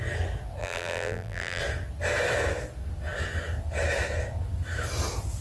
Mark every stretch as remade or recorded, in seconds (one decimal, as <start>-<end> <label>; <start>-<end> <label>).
0.0-0.6 recorded; 0.6-1.6 remade; 1.6-5.4 recorded